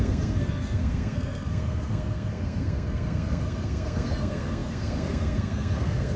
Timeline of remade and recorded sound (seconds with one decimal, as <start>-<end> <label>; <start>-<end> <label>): 0.0-6.2 remade